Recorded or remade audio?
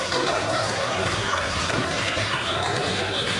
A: remade